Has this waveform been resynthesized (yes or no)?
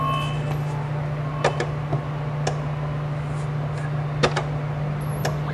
no